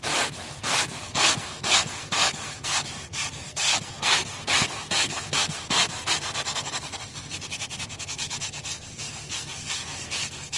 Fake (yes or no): yes